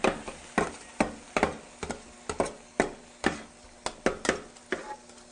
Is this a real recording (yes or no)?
yes